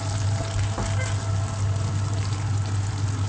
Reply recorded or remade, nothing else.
recorded